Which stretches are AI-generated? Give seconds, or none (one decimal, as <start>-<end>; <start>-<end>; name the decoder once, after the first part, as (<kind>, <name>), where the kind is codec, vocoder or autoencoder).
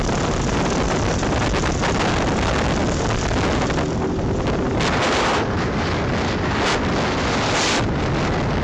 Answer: none